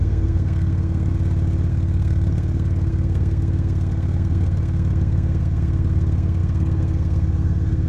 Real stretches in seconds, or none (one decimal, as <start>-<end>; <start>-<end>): 1.1-1.7